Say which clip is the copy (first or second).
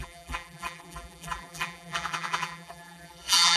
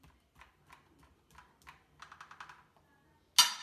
first